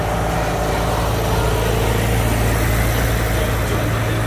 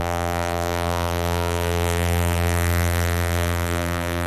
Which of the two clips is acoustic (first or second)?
first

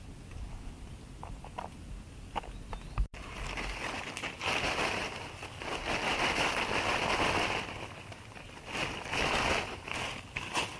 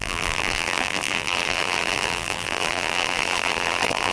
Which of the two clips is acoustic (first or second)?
first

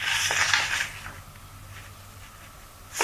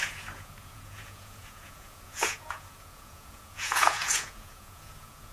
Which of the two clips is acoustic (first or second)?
first